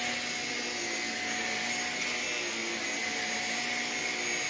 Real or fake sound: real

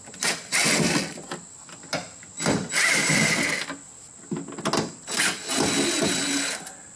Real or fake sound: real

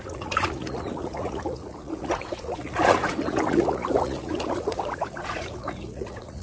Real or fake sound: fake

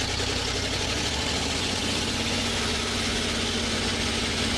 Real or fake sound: fake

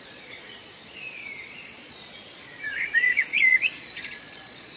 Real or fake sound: fake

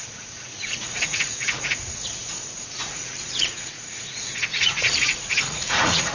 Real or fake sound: fake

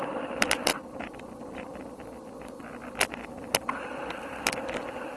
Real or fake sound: real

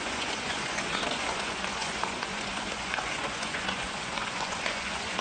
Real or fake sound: fake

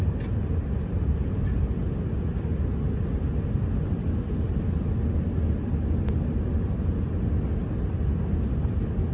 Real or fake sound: real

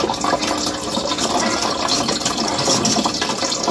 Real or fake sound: real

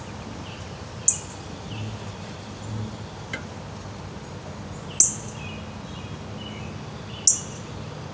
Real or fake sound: real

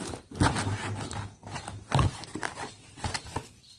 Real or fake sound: real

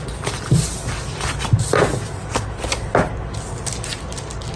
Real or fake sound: real